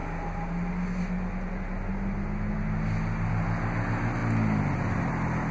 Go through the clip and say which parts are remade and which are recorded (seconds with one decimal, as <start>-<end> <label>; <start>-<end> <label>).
0.0-5.5 recorded

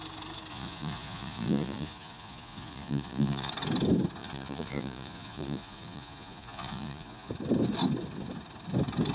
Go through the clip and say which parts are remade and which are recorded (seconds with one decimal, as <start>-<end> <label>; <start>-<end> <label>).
0.0-0.5 recorded; 0.5-3.5 remade; 3.5-4.2 recorded; 4.2-7.3 remade; 7.3-9.1 recorded